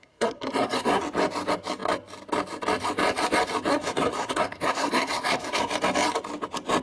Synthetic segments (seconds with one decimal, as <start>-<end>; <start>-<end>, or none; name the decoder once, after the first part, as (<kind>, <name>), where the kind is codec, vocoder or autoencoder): 0.0-1.0 (codec, SNAC); 3.7-5.7